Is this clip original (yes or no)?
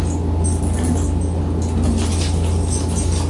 yes